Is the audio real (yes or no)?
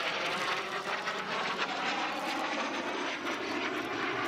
yes